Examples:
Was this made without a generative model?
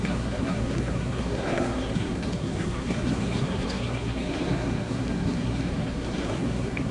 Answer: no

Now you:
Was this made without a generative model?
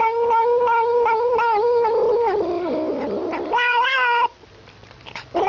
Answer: yes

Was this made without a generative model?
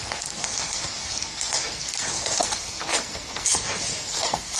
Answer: no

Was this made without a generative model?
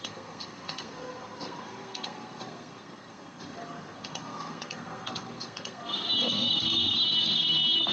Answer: no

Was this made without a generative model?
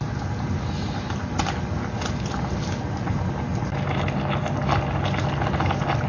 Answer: yes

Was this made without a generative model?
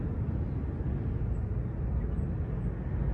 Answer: yes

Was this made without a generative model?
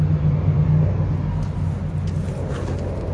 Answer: yes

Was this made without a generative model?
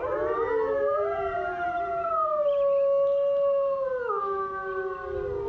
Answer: yes